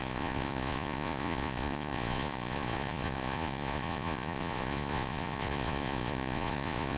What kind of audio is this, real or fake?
fake